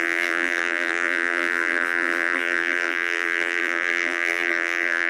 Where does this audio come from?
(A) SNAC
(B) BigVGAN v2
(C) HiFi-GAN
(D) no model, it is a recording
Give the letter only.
B